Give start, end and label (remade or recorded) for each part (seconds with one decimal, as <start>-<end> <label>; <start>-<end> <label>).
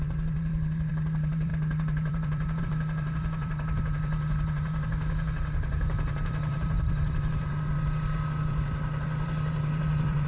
0.0-10.3 remade